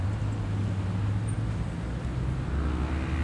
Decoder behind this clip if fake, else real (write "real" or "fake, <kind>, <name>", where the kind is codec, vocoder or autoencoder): real